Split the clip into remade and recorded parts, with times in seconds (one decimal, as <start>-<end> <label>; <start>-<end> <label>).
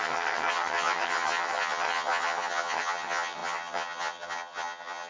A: 0.0-5.1 remade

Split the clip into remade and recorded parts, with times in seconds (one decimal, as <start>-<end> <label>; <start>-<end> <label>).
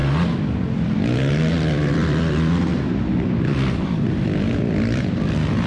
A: 0.0-1.4 recorded; 1.4-5.7 remade